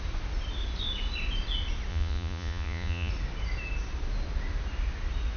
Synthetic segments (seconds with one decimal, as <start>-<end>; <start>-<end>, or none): 1.9-3.1